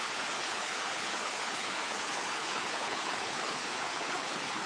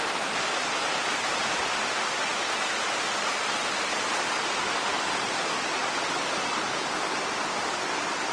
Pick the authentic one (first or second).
second